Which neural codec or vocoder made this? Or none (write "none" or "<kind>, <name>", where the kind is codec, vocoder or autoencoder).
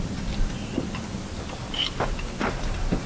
none